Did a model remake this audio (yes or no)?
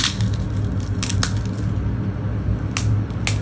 no